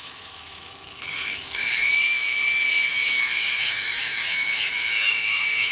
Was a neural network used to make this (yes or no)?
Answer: yes